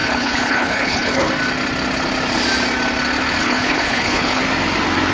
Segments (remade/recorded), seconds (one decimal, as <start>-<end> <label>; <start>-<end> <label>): 0.0-1.3 remade; 1.3-3.4 recorded; 3.4-4.4 remade; 4.4-5.1 recorded